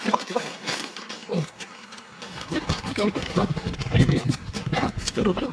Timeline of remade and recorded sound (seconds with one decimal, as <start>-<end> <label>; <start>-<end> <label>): 0.0-5.5 remade